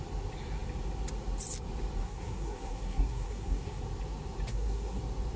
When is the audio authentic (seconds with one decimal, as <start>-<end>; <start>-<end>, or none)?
0.0-2.0; 3.8-4.5; 5.0-5.4